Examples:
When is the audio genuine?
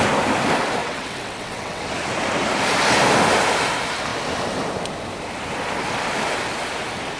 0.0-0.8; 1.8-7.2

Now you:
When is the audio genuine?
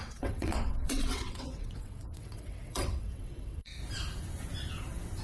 3.7-5.2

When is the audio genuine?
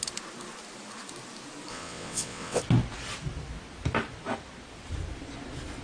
0.0-1.7; 2.6-5.8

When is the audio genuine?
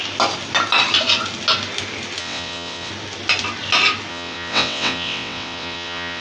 0.0-2.2; 2.9-4.1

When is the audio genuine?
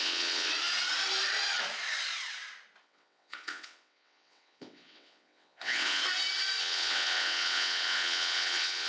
0.5-2.8; 6.0-6.6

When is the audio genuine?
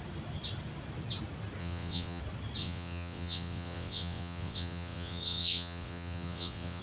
0.0-1.6; 2.2-2.6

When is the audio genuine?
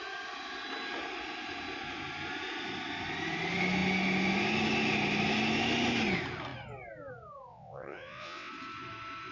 0.0-7.5; 8.5-9.3